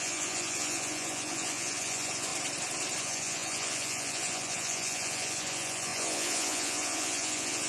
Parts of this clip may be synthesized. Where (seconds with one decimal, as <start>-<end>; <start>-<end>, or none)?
0.0-2.3; 3.0-7.7